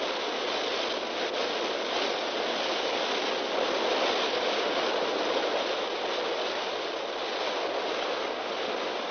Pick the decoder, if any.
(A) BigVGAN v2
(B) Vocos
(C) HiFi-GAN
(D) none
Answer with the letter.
D